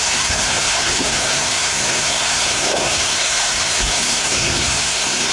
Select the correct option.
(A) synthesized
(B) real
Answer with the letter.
A